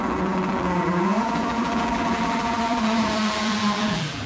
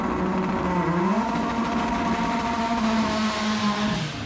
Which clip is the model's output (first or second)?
first